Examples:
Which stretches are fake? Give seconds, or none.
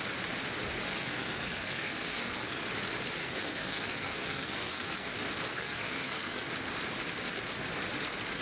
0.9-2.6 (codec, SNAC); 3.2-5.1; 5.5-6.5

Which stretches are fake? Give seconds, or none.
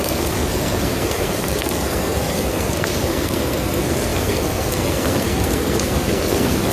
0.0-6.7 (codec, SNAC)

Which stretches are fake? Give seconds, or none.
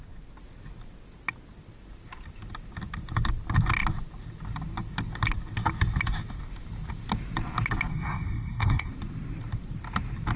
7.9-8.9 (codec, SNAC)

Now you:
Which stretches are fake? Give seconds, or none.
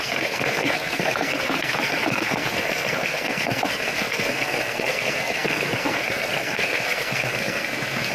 0.0-8.1 (codec, SNAC)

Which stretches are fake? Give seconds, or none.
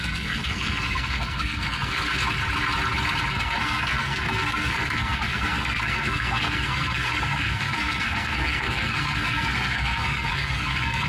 0.0-2.2 (codec, SNAC); 3.3-11.1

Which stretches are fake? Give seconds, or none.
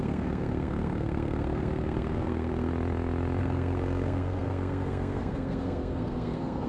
0.0-2.7 (codec, SNAC); 3.4-6.7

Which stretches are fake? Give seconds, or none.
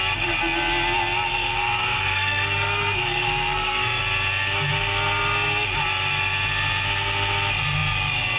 1.3-4.0 (codec, SNAC)